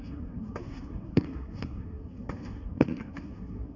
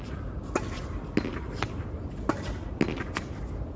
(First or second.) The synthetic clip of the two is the first